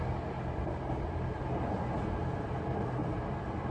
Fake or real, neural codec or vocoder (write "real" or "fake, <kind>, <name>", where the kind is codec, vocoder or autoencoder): real